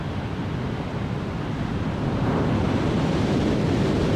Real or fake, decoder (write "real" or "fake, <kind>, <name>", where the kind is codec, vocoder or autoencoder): real